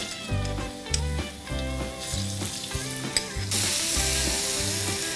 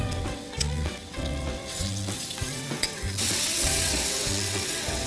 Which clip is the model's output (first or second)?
second